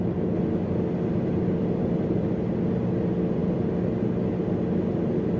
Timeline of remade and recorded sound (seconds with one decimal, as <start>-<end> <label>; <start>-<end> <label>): 0.0-5.4 recorded